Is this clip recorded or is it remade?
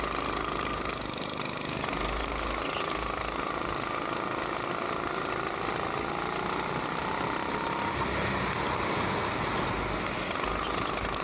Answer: recorded